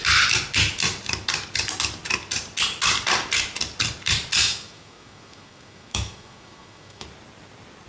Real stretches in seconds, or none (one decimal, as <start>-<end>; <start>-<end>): 0.0-4.4; 7.1-7.9